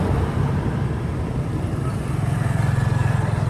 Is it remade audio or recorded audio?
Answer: recorded